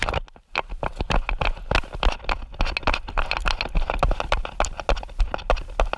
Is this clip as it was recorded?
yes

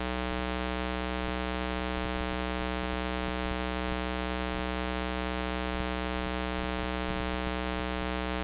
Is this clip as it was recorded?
yes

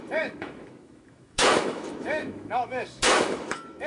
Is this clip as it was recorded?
no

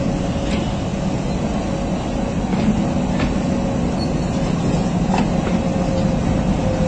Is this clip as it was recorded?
yes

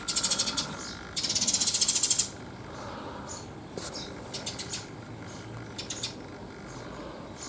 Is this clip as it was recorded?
yes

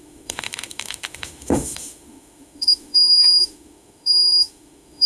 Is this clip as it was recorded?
no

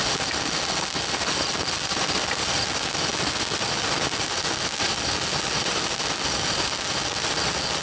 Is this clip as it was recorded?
yes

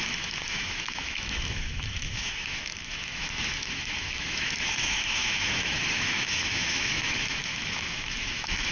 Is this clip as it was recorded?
no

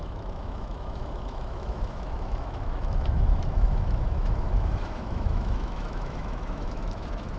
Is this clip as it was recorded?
no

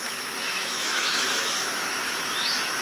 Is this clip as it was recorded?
no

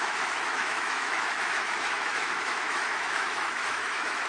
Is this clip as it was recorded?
no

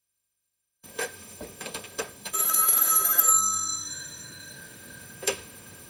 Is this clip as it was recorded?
no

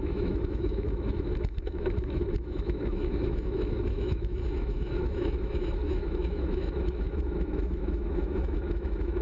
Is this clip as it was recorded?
no